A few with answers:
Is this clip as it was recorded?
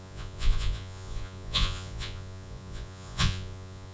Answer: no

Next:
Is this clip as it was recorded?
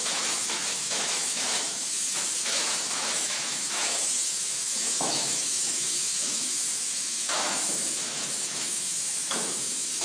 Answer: no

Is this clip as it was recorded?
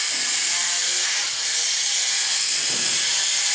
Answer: yes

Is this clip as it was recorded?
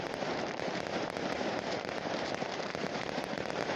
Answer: no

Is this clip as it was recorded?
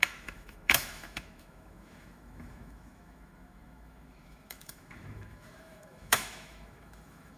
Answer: no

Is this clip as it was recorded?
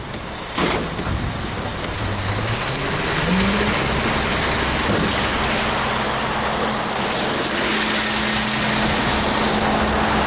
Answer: yes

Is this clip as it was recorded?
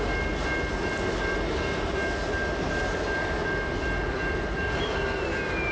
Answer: yes